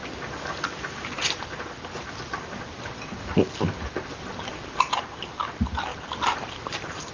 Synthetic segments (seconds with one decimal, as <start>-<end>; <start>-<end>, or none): 5.9-7.1